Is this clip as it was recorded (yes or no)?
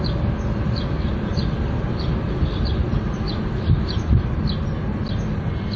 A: yes